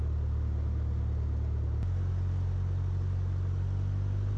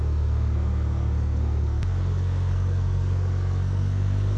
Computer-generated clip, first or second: second